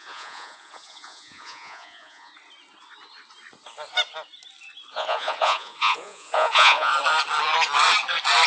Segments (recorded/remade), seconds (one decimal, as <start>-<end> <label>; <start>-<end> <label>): 0.0-2.3 remade; 2.3-4.9 recorded; 4.9-6.9 remade; 6.9-8.5 recorded